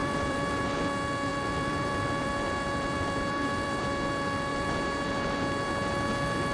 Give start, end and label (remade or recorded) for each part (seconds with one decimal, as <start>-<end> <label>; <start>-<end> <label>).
0.0-0.6 remade; 0.6-1.3 recorded; 1.3-3.9 remade; 3.9-4.5 recorded; 4.5-5.1 remade; 5.1-6.5 recorded